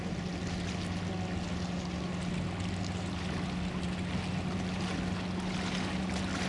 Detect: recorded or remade recorded